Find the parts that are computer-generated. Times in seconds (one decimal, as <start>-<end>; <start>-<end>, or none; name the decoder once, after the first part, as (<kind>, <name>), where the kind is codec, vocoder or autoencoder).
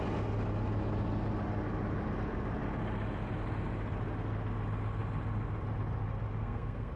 6.4-7.0 (codec, SNAC)